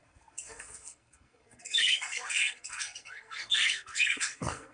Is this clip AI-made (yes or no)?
yes